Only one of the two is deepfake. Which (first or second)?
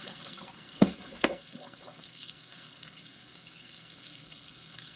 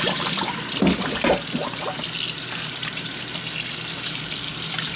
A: first